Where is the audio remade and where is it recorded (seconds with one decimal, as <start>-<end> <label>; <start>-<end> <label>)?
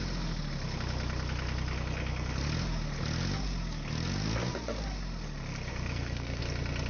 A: 0.0-5.7 recorded; 5.7-6.4 remade; 6.4-6.9 recorded